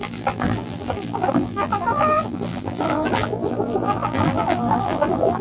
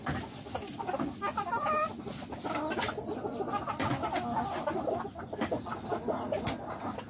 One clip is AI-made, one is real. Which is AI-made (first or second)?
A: first